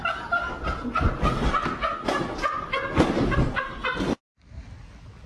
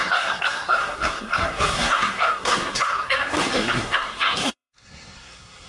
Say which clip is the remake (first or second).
second